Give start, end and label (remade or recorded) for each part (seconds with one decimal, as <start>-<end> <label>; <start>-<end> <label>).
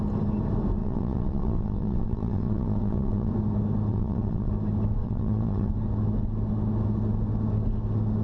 0.0-0.8 recorded; 0.8-3.3 remade; 3.3-3.9 recorded; 3.9-4.5 remade; 4.5-5.0 recorded; 5.0-5.7 remade; 5.7-8.2 recorded